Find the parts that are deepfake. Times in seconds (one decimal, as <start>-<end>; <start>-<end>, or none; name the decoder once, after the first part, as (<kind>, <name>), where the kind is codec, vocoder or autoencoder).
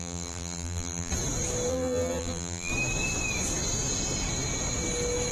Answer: 0.0-1.1 (vocoder, BigVGAN v2); 1.7-2.7